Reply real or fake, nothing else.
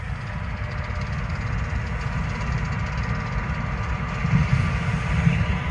real